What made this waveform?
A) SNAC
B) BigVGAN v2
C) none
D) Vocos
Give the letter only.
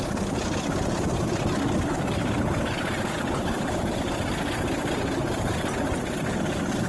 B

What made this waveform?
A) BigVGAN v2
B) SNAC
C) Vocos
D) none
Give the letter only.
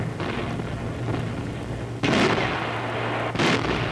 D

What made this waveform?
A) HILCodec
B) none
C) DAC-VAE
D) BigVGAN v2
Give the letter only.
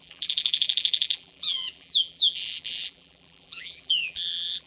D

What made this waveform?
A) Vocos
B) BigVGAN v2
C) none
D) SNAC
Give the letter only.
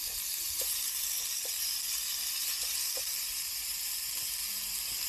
C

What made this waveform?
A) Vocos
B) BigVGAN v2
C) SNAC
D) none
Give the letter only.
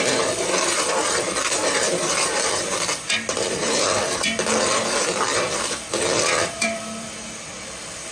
B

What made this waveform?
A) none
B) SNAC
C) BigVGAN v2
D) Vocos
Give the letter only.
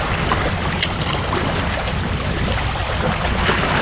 A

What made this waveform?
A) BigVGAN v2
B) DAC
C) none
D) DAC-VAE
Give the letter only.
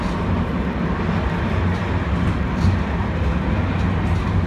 C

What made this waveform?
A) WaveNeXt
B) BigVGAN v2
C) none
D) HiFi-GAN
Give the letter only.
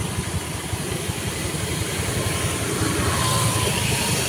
B